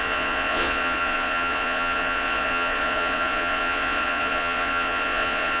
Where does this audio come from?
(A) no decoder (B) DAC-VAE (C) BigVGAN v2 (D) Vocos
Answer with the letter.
D